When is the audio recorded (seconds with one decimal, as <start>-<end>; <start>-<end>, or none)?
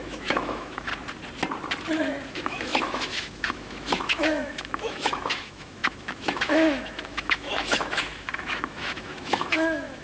0.9-2.3